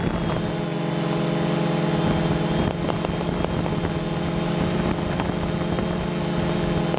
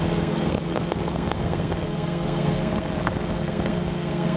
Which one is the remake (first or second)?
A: second